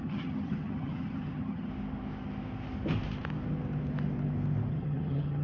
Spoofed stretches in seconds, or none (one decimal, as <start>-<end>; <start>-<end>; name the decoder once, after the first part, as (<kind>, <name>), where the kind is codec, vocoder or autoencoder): 0.0-1.7 (vocoder, HiFi-GAN); 4.7-5.4